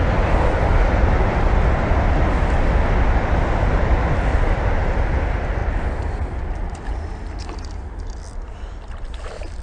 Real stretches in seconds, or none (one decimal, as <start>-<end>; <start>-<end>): 0.0-9.6